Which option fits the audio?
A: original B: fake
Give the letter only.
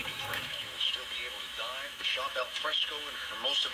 B